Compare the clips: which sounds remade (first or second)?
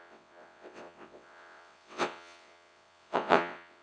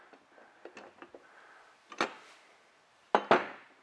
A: first